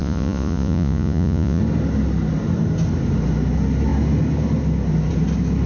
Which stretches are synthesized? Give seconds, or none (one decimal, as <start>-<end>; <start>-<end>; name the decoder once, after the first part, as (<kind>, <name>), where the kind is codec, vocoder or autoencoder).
0.0-1.6 (vocoder, Vocos)